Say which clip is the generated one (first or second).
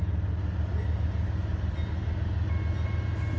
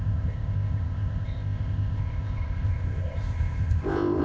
second